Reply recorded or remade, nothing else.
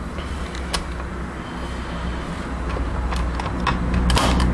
recorded